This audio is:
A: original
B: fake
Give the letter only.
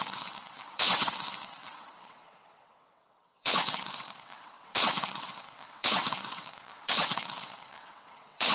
B